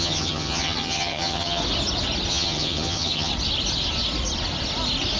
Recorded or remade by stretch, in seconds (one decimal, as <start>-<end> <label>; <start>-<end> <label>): 0.0-1.6 remade; 1.6-2.3 recorded; 2.3-3.3 remade; 3.3-5.2 recorded